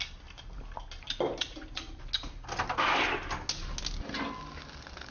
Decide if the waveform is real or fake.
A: real